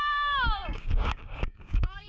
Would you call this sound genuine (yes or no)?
no